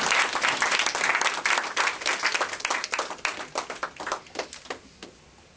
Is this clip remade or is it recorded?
recorded